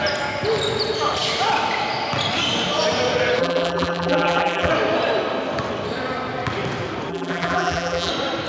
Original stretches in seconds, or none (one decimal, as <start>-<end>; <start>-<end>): 0.0-3.4; 4.7-7.1; 8.1-8.5